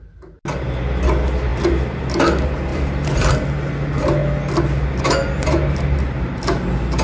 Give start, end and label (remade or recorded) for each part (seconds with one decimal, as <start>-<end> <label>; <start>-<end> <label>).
0.0-1.5 recorded; 1.5-2.0 remade; 2.0-2.7 recorded; 2.7-3.3 remade; 3.3-7.0 recorded

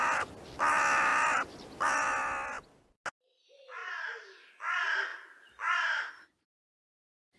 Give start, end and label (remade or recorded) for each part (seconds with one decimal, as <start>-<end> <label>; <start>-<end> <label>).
0.0-2.2 remade; 2.2-3.1 recorded; 3.1-3.8 remade; 3.8-4.5 recorded; 4.5-5.1 remade; 5.1-6.1 recorded; 6.1-7.4 remade